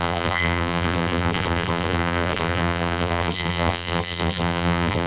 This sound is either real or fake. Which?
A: fake